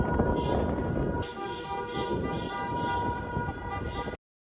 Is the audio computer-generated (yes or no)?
no